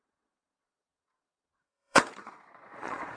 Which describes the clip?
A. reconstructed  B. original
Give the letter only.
A